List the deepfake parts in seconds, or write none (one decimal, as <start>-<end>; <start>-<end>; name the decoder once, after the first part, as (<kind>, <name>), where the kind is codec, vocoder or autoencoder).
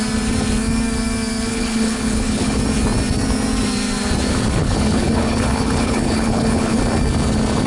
1.5-2.6 (codec, HILCodec); 4.6-6.8